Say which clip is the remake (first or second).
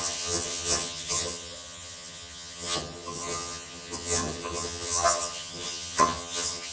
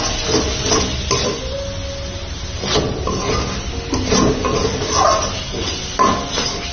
first